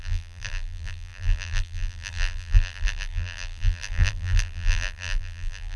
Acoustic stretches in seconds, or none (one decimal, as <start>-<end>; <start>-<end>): none